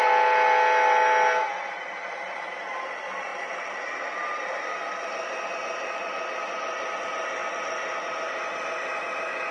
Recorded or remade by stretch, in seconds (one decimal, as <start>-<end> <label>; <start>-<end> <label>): 0.0-9.5 recorded